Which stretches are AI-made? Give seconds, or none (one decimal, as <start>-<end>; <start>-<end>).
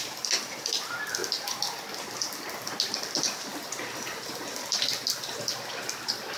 none